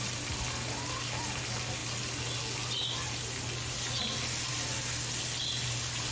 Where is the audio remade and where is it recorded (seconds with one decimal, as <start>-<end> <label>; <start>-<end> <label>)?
0.0-6.1 recorded